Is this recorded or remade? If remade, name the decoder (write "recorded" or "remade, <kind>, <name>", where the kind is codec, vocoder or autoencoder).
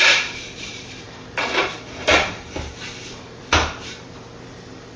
remade, vocoder, BigVGAN v2